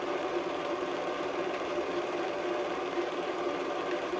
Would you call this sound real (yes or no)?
no